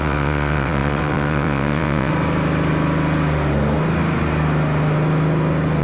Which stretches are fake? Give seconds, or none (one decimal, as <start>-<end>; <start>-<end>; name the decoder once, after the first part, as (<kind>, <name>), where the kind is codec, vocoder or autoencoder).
0.0-2.1 (vocoder, WaveNeXt)